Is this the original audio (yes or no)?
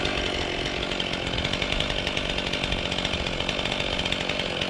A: yes